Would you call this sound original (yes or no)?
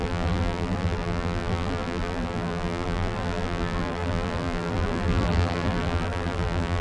no